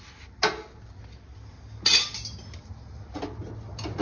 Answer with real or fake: real